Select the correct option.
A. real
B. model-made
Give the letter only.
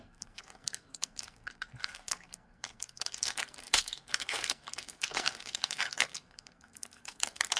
B